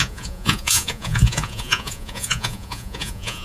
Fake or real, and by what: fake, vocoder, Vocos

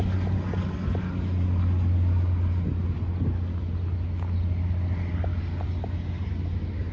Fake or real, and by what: real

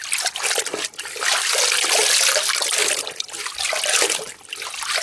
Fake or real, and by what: real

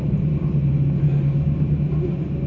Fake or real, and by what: real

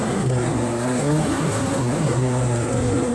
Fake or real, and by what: fake, codec, SNAC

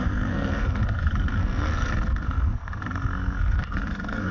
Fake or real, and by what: fake, codec, SNAC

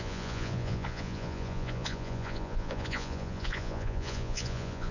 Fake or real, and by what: fake, vocoder, Vocos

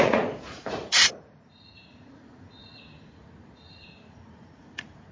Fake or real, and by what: fake, vocoder, Vocos